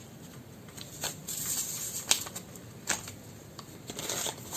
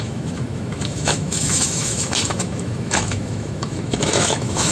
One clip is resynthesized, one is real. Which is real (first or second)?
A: first